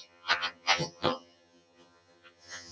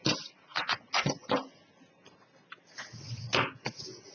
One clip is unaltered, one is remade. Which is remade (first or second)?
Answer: first